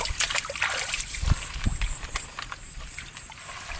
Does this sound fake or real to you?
real